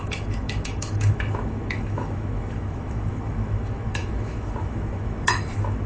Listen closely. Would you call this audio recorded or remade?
remade